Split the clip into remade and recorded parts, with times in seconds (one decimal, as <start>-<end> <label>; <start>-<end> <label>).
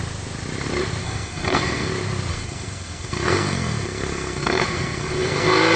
0.0-1.0 recorded; 1.0-1.9 remade; 1.9-2.3 recorded; 2.3-5.8 remade